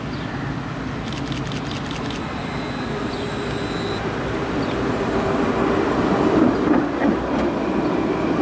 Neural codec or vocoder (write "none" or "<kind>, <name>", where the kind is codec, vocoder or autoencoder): none